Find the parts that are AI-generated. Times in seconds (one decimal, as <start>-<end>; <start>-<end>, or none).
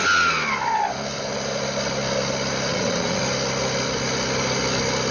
2.7-3.2